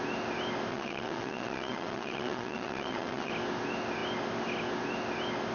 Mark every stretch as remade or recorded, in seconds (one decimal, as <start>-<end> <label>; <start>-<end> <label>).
0.0-0.7 recorded; 0.7-3.3 remade; 3.3-5.5 recorded

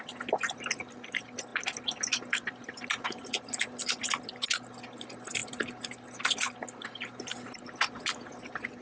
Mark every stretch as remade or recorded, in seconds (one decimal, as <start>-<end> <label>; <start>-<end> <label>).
0.0-8.8 recorded

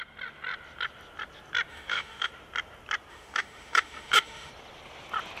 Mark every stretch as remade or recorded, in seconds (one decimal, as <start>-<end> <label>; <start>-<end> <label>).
0.0-1.7 recorded; 1.7-2.3 remade; 2.3-3.1 recorded; 3.1-4.5 remade; 4.5-5.4 recorded

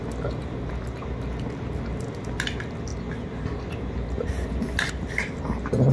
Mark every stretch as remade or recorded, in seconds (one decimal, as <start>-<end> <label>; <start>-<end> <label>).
0.0-5.9 recorded

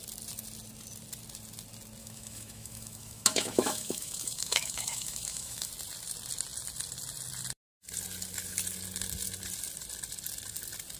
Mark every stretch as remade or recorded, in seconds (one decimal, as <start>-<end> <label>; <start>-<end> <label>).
0.0-2.0 recorded; 2.0-5.7 remade; 5.7-11.0 recorded